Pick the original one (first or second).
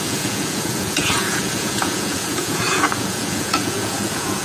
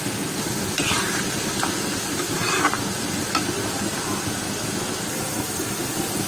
second